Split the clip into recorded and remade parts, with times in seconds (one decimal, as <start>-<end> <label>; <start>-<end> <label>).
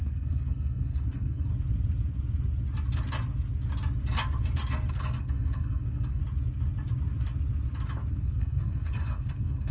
0.0-1.5 remade; 1.5-4.9 recorded; 4.9-6.2 remade; 6.2-8.1 recorded; 8.1-9.7 remade